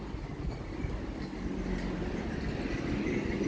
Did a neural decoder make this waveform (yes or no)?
no